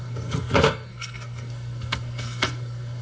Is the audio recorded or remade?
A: remade